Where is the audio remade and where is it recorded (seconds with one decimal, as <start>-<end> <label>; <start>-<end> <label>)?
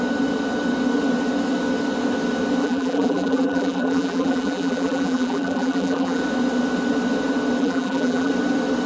0.0-2.6 recorded; 2.6-6.2 remade; 6.2-7.6 recorded; 7.6-8.3 remade; 8.3-8.9 recorded